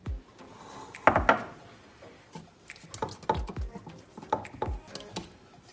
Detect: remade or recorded recorded